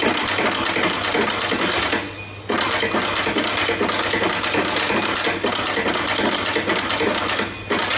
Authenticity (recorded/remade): recorded